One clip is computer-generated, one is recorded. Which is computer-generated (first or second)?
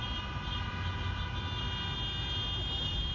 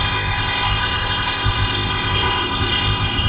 second